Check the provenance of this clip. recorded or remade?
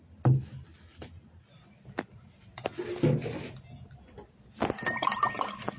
recorded